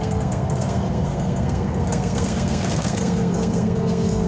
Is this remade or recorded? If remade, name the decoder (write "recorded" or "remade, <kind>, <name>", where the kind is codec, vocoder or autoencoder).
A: remade, codec, SNAC